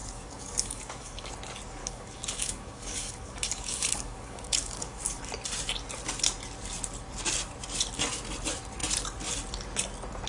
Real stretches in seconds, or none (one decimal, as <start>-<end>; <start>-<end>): 1.3-1.8; 5.2-10.3